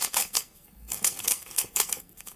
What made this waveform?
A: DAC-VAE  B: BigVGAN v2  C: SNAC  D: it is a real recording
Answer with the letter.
C